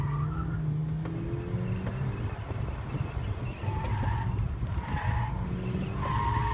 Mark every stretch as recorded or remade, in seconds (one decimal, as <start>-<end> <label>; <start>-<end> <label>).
0.0-6.5 recorded